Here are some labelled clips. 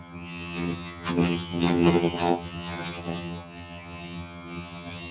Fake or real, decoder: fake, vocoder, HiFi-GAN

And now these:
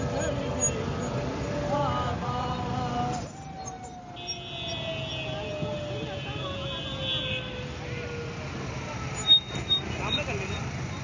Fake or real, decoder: real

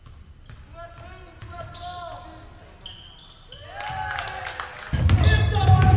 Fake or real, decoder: real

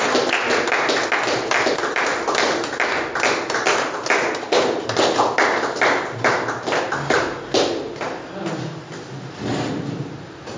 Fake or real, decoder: real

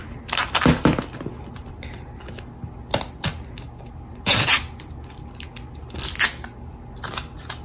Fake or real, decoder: real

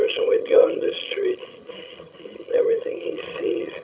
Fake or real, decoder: fake, vocoder, HiFi-GAN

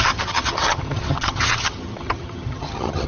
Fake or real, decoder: fake, vocoder, HiFi-GAN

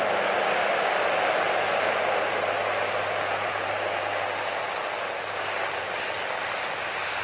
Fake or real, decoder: real